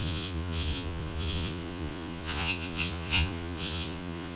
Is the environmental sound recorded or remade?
remade